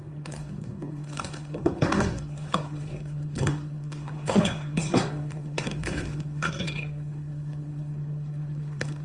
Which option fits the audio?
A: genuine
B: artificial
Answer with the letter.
B